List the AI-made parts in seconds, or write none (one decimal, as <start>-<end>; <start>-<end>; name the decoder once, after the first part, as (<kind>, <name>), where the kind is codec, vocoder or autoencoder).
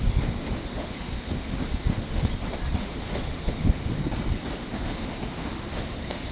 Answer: 0.0-2.3 (autoencoder, DAC-VAE); 2.8-4.0; 4.5-6.3